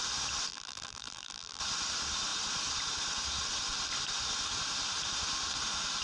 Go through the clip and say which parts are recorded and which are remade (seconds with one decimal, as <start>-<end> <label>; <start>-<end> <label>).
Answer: 0.0-0.5 recorded; 0.5-1.6 remade; 1.6-6.0 recorded